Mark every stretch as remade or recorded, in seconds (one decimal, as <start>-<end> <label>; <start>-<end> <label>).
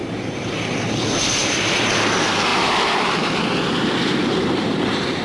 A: 0.0-5.2 remade